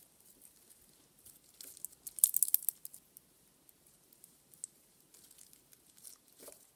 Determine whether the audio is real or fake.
real